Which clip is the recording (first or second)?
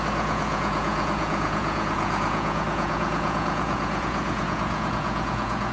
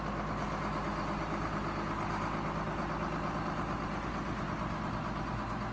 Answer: second